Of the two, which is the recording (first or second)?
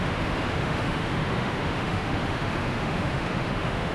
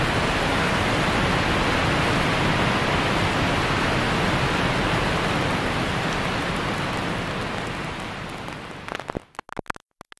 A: second